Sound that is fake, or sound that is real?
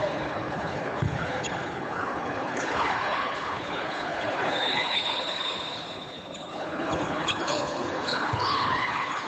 fake